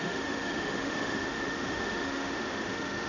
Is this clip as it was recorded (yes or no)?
no